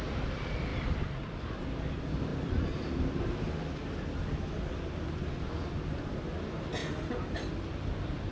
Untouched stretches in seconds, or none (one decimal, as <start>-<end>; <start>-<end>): 0.0-2.3; 4.4-8.3